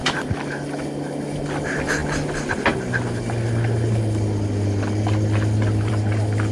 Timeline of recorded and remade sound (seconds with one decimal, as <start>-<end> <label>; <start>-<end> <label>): 0.0-6.5 recorded